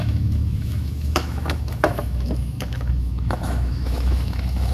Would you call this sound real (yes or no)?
no